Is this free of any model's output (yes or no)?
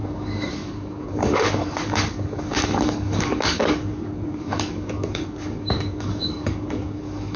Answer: no